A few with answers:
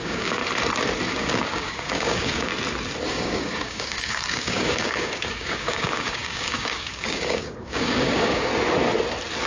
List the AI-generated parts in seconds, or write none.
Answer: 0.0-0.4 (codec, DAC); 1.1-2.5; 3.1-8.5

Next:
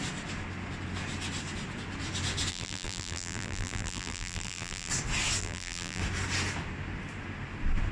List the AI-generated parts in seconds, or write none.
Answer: 2.5-4.9 (vocoder, BigVGAN v2); 5.4-6.0

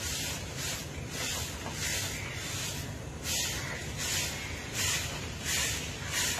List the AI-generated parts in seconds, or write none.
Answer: 0.0-0.8 (vocoder, BigVGAN v2); 4.6-6.4

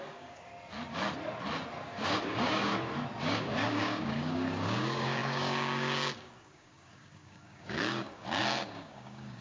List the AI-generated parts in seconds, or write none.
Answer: 0.0-0.5 (codec, DAC); 1.8-2.7; 3.2-9.4

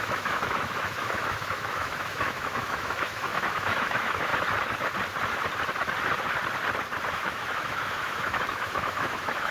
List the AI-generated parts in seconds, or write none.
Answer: 0.0-4.3 (autoencoder, DAC-VAE); 7.1-9.5

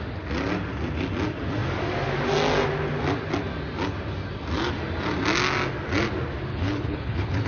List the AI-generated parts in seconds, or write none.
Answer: 6.5-7.5 (codec, HILCodec)

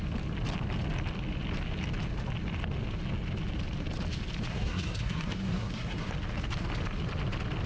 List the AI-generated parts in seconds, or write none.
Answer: 4.5-6.1 (codec, SNAC)

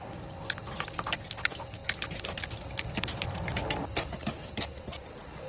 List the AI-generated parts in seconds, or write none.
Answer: none